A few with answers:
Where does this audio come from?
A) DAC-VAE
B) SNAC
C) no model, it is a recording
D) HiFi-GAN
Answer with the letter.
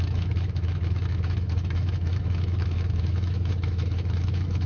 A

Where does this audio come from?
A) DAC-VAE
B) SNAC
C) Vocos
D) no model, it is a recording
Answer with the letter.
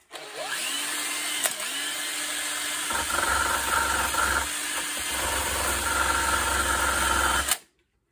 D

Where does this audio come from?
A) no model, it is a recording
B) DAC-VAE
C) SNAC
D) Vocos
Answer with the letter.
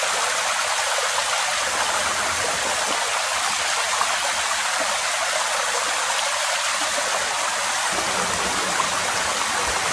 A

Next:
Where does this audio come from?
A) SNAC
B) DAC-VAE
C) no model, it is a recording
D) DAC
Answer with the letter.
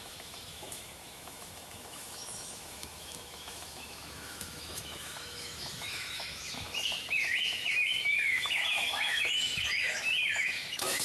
B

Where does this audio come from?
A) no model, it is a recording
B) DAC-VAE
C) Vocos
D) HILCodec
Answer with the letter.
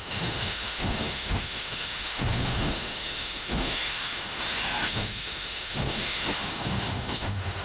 B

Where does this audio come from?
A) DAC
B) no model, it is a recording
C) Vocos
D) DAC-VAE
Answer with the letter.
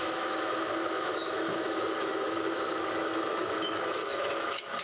D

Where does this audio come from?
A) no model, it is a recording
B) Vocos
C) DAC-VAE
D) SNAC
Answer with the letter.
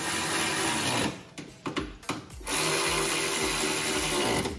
A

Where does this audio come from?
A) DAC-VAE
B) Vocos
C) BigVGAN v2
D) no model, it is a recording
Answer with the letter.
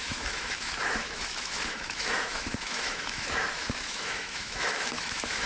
A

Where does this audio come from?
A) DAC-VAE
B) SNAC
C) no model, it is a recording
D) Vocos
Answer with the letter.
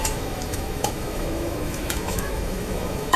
A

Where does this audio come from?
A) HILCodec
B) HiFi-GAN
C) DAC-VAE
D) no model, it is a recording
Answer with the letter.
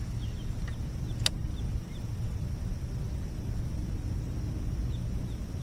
D